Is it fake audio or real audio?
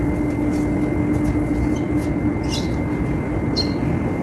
real